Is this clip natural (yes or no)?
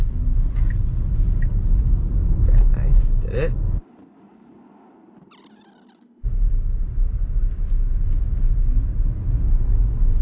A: yes